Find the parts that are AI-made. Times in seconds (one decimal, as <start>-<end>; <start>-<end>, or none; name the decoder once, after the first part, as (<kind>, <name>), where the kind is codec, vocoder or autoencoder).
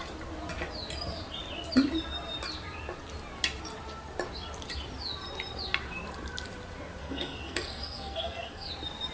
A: 7.0-8.7 (codec, SNAC)